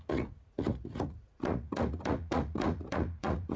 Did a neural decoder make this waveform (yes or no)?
yes